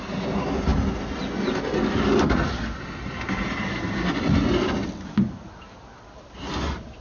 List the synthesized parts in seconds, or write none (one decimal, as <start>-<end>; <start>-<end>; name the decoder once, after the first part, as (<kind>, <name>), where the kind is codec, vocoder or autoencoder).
none